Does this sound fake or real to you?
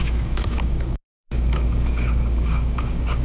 fake